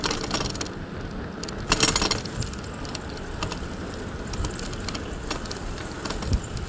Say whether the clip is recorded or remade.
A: recorded